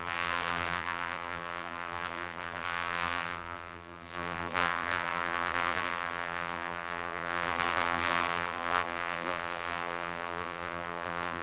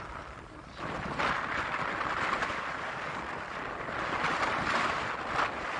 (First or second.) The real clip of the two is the second